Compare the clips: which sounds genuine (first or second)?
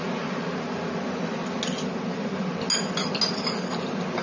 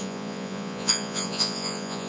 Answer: first